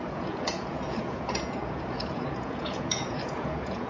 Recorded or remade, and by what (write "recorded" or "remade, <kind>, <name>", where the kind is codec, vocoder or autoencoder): remade, vocoder, Vocos